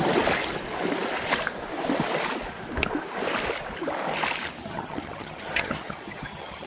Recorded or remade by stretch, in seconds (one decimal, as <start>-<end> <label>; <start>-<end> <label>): 0.0-4.6 recorded; 4.6-6.7 remade